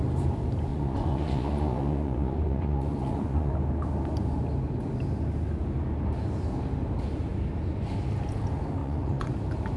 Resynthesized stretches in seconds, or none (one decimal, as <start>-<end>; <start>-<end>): 0.7-3.5; 8.8-9.3